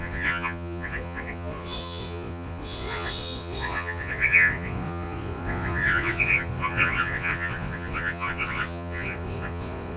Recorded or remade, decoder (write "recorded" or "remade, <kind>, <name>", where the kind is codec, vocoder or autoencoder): remade, vocoder, Vocos